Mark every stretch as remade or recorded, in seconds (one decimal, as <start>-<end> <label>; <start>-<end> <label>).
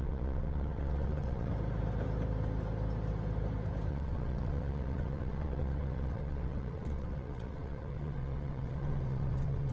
0.0-1.5 remade; 1.5-3.9 recorded; 3.9-9.7 remade